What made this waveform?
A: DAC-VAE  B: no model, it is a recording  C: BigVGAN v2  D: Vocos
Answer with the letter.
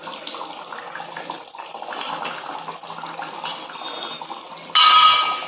B